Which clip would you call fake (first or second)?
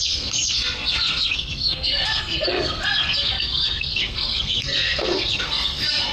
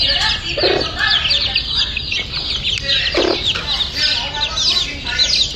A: first